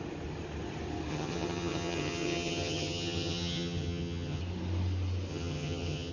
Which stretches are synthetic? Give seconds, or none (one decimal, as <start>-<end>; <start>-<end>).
1.1-4.4; 5.3-6.1